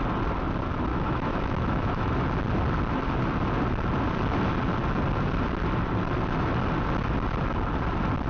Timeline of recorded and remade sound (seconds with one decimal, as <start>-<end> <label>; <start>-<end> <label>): 0.0-0.9 recorded; 0.9-2.1 remade; 2.1-8.3 recorded